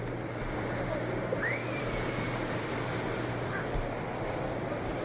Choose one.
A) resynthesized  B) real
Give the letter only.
A